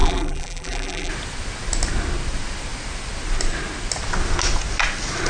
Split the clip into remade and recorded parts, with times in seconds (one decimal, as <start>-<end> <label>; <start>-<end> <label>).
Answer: 0.0-1.1 remade; 1.1-5.3 recorded